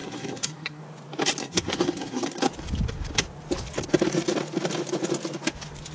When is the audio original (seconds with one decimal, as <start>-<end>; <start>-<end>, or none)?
0.8-1.4; 2.4-5.9